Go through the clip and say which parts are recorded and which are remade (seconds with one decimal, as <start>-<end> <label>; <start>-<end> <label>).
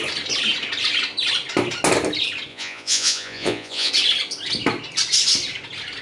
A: 0.0-2.5 recorded; 2.5-3.9 remade; 3.9-6.0 recorded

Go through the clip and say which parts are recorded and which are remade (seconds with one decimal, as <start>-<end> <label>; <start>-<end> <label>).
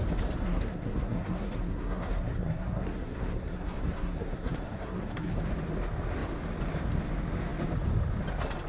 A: 0.0-0.4 recorded; 0.4-5.4 remade; 5.4-8.7 recorded